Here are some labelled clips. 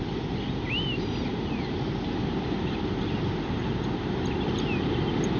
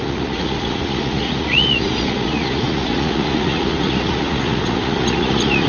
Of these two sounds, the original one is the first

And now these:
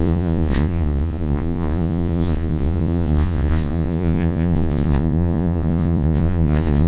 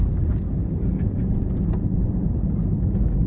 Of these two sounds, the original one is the second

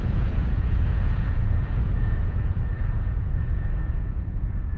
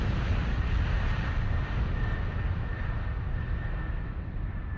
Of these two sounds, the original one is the second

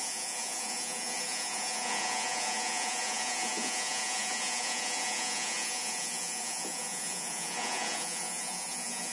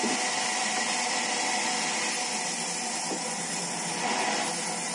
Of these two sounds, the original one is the second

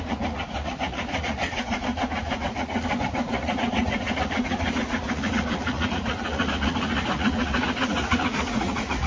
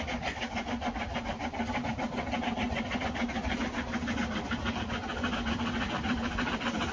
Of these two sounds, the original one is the second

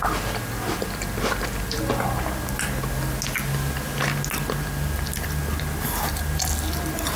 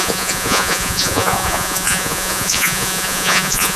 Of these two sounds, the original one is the first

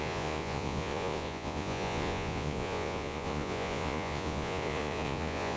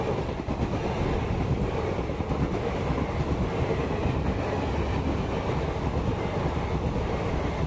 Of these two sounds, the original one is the second